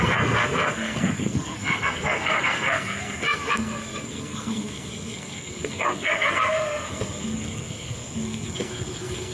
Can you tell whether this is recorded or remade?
remade